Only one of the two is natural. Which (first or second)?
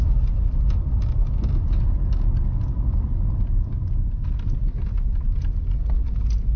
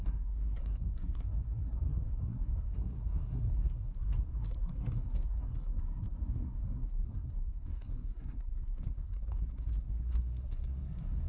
first